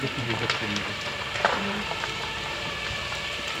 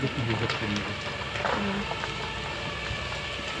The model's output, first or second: first